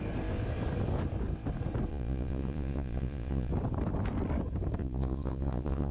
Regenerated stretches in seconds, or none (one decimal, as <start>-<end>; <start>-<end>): 1.9-3.5; 4.8-5.9